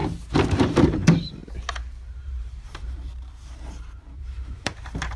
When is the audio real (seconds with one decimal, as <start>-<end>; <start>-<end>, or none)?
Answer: 1.4-2.1